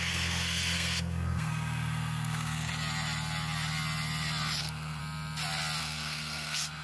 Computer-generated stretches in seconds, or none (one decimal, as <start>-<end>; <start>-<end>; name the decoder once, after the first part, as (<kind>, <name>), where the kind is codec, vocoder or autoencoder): 0.0-2.7 (codec, SNAC); 4.6-5.0; 5.8-6.8